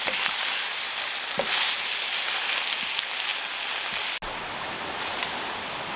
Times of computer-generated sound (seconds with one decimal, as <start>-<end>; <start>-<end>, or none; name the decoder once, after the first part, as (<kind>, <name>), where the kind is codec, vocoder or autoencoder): 0.0-2.1 (vocoder, BigVGAN v2)